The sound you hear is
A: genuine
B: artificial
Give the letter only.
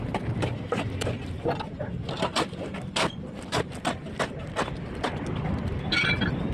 B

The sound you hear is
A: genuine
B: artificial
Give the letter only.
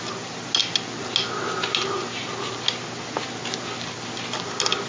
A